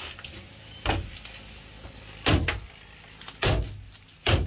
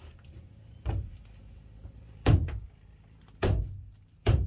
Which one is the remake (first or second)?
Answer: second